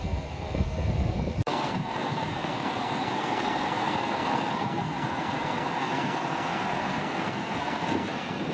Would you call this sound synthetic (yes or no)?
yes